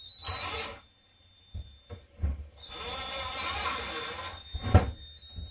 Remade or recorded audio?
recorded